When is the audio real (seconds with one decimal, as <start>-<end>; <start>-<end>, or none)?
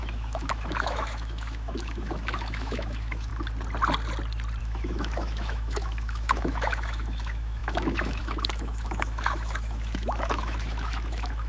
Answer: 3.3-4.6